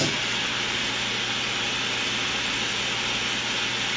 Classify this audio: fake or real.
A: real